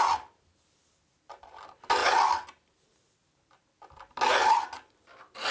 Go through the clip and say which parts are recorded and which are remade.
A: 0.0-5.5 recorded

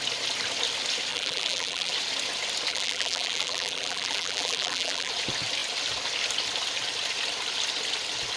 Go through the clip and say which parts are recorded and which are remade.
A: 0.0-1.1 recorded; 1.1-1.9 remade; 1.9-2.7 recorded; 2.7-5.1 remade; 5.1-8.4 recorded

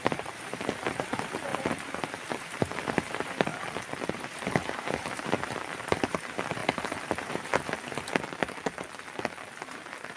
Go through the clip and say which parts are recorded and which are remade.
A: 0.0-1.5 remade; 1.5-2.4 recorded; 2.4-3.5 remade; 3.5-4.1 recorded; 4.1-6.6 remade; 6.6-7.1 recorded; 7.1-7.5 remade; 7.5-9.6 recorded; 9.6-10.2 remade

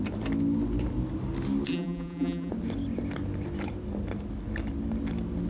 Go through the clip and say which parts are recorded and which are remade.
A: 0.0-1.7 recorded; 1.7-2.5 remade; 2.5-5.5 recorded

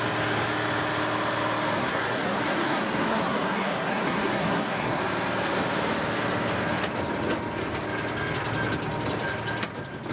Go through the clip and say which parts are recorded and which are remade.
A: 0.0-1.8 recorded; 1.8-5.0 remade; 5.0-10.1 recorded